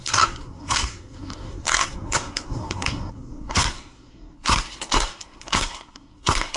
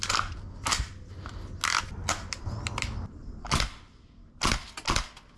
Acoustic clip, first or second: second